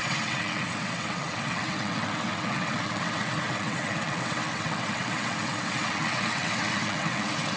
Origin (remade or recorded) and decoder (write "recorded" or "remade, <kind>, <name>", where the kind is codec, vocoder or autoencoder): remade, vocoder, WaveNeXt